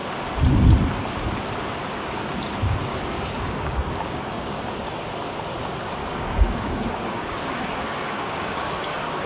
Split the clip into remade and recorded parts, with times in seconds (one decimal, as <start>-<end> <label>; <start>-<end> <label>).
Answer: 0.0-2.9 recorded; 2.9-4.6 remade; 4.6-6.0 recorded; 6.0-9.3 remade